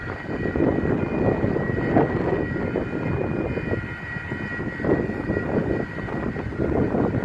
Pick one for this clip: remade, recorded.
recorded